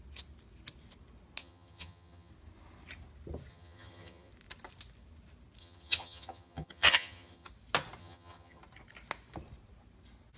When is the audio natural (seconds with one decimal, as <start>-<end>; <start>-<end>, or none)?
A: 0.0-1.4; 2.3-3.5; 4.3-5.6; 7.5-8.0; 8.6-10.4